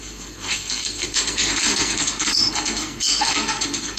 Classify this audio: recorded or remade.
remade